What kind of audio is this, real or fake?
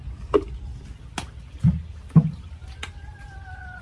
real